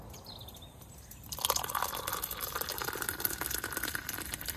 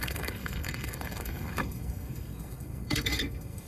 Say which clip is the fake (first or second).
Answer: second